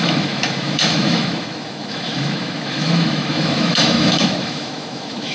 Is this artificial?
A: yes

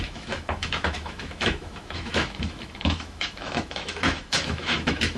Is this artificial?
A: yes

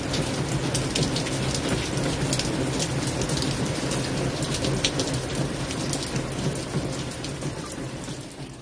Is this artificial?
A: no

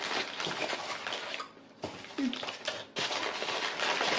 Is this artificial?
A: no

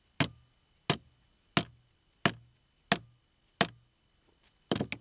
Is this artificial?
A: no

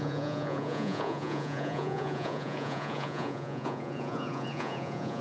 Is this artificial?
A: yes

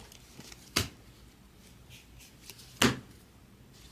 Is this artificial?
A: no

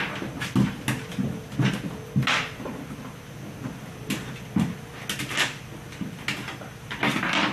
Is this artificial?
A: no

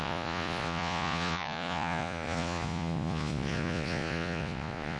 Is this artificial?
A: yes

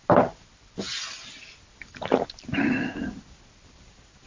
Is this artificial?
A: no